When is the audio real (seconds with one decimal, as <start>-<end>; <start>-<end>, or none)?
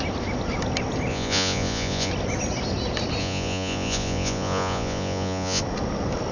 0.0-1.1; 2.1-3.2; 5.6-6.3